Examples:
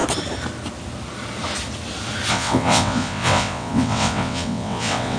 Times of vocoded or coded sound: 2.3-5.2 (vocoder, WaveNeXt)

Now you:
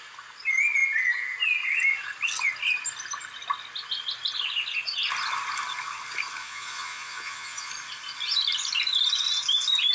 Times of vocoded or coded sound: 6.4-7.7 (vocoder, Vocos)

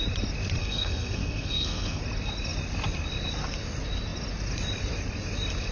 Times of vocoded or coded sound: 0.6-2.0 (codec, SNAC)

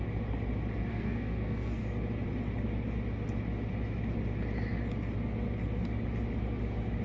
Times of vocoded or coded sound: 0.9-1.8 (codec, SNAC)

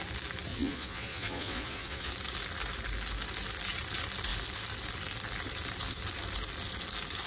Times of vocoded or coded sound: 0.5-2.1 (vocoder, Vocos)